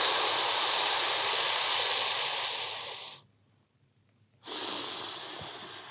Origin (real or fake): real